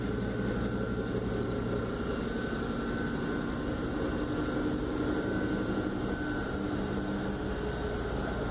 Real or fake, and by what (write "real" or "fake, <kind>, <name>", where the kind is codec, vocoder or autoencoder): real